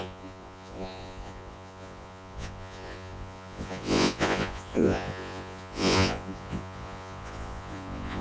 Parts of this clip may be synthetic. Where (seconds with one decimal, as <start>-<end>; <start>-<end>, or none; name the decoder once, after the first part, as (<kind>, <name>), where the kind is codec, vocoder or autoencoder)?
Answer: 0.0-8.2 (vocoder, Vocos)